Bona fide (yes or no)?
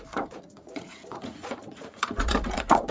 no